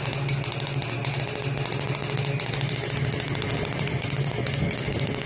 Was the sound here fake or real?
real